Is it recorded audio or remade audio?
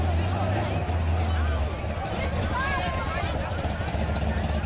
recorded